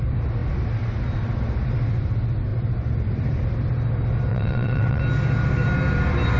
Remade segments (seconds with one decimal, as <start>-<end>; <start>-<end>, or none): 4.3-5.0